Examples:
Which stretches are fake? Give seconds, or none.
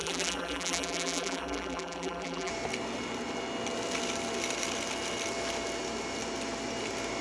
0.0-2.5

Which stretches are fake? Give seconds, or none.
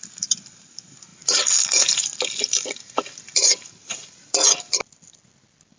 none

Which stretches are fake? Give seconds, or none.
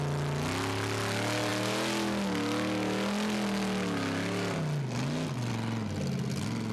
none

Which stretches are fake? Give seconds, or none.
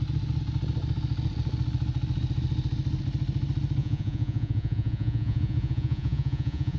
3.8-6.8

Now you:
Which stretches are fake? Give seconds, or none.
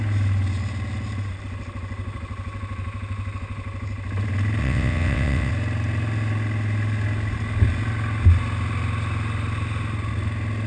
4.6-5.5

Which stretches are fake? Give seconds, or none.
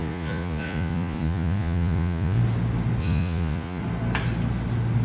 0.0-2.4; 3.0-3.8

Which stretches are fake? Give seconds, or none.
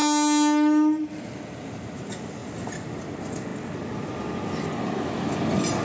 none